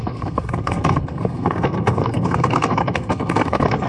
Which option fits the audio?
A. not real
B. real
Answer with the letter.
A